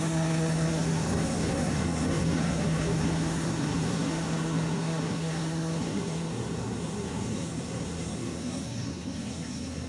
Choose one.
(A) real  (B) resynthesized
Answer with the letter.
B